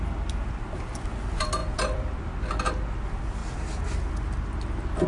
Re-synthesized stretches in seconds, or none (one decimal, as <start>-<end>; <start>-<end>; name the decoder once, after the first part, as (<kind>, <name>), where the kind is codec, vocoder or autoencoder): 1.6-2.2 (vocoder, BigVGAN v2)